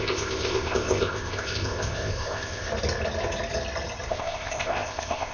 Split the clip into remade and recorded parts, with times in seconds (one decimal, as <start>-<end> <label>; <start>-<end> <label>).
0.0-2.7 remade; 2.7-4.1 recorded; 4.1-5.3 remade